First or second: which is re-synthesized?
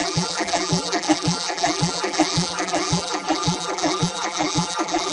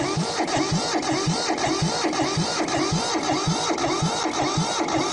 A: first